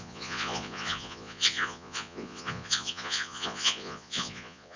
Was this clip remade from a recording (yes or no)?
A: yes